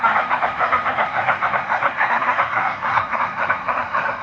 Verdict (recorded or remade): remade